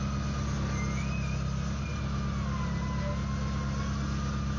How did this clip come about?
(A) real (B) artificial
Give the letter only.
A